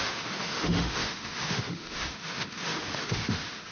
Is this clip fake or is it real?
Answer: fake